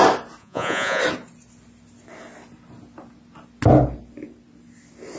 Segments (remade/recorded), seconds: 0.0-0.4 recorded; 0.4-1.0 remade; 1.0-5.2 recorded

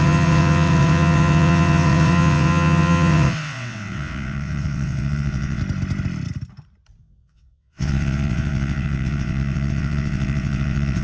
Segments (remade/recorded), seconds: 0.0-5.6 remade; 5.6-7.0 recorded; 7.0-11.0 remade

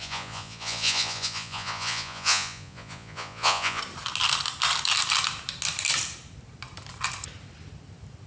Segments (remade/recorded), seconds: 0.0-3.8 remade; 3.8-8.3 recorded